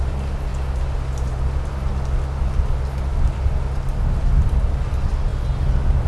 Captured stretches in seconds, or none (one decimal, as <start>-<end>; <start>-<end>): 0.0-6.1